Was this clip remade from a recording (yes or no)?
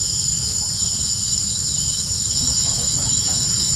yes